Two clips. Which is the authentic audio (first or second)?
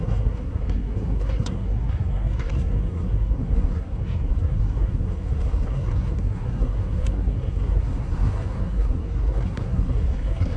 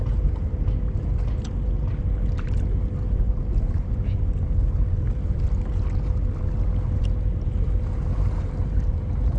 second